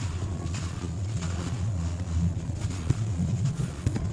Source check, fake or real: fake